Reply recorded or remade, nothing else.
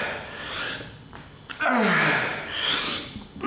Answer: recorded